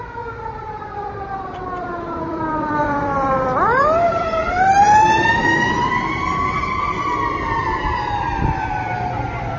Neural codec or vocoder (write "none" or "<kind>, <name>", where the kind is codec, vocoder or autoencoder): vocoder, BigVGAN v2